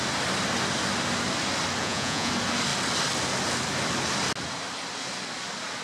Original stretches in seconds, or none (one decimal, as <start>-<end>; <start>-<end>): 0.0-1.8; 2.3-5.8

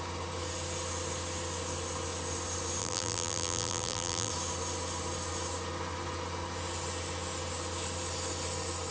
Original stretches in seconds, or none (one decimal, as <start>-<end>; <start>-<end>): 0.0-2.8; 4.3-8.9